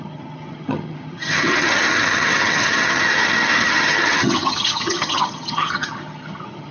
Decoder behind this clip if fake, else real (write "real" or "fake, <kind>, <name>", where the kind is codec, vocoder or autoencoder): fake, vocoder, HiFi-GAN